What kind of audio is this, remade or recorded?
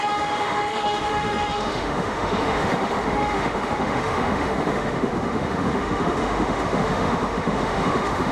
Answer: remade